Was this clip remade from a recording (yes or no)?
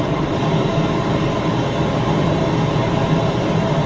no